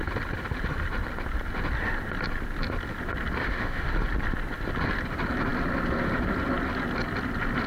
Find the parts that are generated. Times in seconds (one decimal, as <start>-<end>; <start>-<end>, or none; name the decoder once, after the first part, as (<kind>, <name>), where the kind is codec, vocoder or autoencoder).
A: 3.4-3.9 (autoencoder, DAC-VAE)